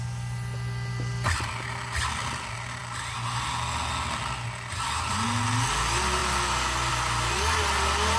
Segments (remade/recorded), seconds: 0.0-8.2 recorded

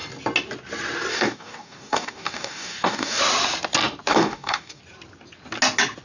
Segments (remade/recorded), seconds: 0.0-1.1 recorded; 1.1-3.2 remade; 3.2-4.1 recorded; 4.1-4.8 remade; 4.8-6.0 recorded

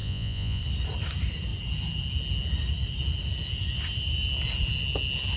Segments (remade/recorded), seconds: 0.0-0.6 remade; 0.6-5.4 recorded

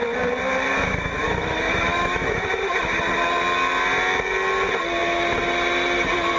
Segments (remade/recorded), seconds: 0.0-0.7 recorded; 0.7-3.0 remade; 3.0-6.4 recorded

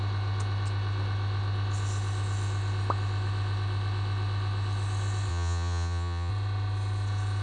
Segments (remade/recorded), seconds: 0.0-5.3 recorded; 5.3-6.3 remade; 6.3-7.4 recorded

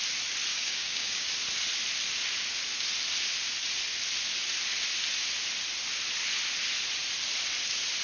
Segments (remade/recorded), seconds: 0.0-0.5 recorded; 0.5-1.3 remade; 1.3-8.0 recorded